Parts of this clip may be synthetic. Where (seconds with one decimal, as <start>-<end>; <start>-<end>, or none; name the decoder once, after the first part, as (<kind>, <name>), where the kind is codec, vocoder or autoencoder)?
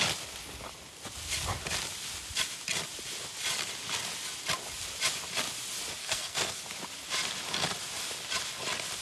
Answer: 6.0-6.6 (codec, SNAC)